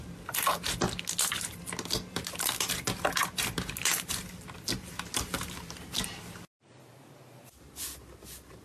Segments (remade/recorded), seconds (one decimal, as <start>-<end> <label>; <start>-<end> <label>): 0.0-8.6 recorded